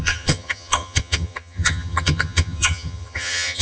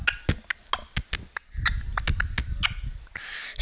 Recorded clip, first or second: second